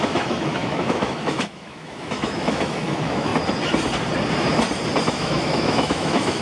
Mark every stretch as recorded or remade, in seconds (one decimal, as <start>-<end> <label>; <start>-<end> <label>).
0.0-3.3 remade; 3.3-5.1 recorded; 5.1-6.4 remade